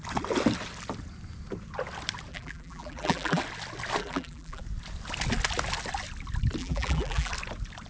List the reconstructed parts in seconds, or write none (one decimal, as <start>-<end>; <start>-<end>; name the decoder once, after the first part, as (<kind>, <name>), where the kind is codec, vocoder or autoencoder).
2.3-3.4 (vocoder, BigVGAN v2); 4.0-4.6; 6.6-7.3

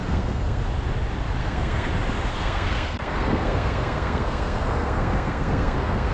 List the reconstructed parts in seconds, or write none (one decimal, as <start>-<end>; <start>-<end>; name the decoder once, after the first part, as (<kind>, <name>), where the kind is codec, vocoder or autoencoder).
0.0-0.6 (codec, SNAC); 1.4-1.9; 2.3-6.1